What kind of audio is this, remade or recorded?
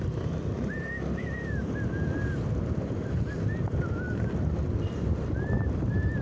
remade